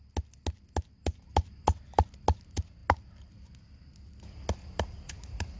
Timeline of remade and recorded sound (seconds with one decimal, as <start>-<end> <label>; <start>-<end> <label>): 0.0-5.6 recorded